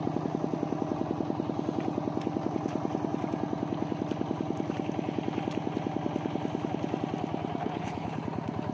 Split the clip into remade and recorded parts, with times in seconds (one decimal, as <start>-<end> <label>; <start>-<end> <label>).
0.0-7.6 recorded; 7.6-8.2 remade; 8.2-8.7 recorded